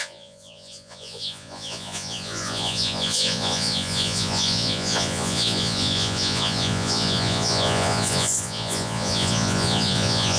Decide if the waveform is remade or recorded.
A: remade